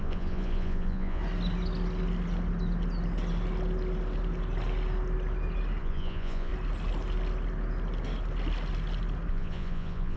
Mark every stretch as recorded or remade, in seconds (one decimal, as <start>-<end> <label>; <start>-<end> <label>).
0.0-1.2 remade; 1.2-5.8 recorded; 5.8-6.5 remade; 6.5-9.3 recorded; 9.3-10.2 remade